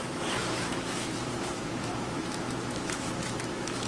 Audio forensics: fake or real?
fake